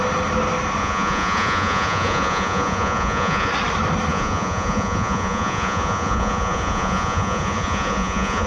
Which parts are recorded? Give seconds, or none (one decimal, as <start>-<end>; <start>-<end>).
0.0-0.8; 3.5-4.1